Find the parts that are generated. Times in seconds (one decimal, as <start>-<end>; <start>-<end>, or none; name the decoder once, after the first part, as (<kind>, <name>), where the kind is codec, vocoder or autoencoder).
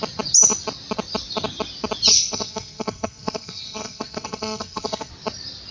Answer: 2.1-5.1 (codec, SNAC)